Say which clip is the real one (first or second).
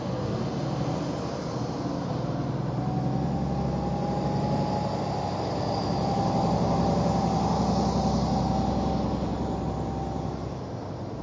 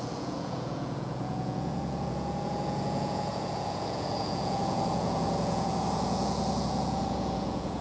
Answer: first